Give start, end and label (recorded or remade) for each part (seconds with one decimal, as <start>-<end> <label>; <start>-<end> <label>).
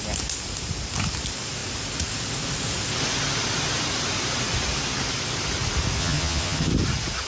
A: 0.0-6.0 recorded; 6.0-6.7 remade; 6.7-7.3 recorded